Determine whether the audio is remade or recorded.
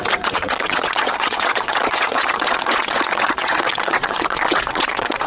remade